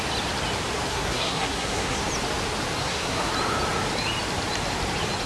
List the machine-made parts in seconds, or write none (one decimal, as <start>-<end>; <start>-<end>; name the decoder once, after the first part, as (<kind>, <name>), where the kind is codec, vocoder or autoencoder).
0.9-2.0 (codec, SNAC); 2.8-3.3

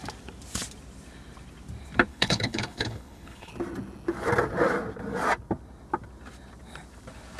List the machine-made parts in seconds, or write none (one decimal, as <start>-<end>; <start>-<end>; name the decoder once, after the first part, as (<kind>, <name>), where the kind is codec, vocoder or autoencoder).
2.1-3.5 (codec, HILCodec)

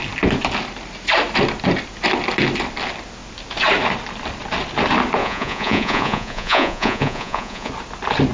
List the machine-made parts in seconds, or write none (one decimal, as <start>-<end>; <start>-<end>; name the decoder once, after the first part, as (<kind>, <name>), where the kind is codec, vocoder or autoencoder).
5.2-7.7 (vocoder, Vocos)

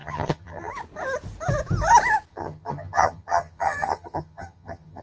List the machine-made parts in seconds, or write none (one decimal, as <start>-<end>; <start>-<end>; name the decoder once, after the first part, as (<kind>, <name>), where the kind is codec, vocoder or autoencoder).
0.0-0.7 (vocoder, HiFi-GAN); 2.3-5.0

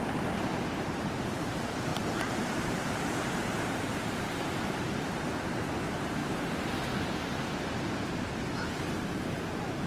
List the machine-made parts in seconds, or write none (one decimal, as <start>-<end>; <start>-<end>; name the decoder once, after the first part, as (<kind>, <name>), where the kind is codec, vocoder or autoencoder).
0.0-6.2 (vocoder, BigVGAN v2)

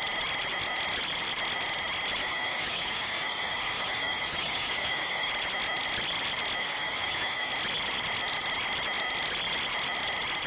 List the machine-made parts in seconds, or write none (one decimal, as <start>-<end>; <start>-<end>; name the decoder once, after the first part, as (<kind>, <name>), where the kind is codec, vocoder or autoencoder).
2.2-5.3 (codec, DAC); 6.6-7.5

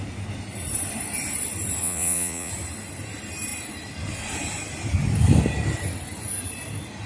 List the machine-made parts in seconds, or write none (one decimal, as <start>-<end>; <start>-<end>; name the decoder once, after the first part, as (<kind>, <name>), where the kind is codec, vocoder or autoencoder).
1.8-2.5 (vocoder, Vocos)

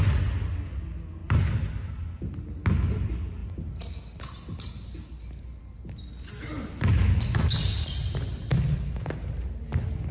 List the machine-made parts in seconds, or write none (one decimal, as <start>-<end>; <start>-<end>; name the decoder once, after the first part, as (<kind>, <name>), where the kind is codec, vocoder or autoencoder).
1.2-2.6 (vocoder, BigVGAN v2)